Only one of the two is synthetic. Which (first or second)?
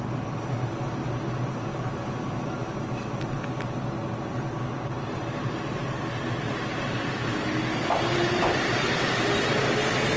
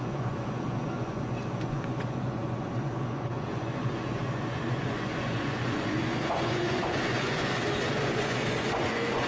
second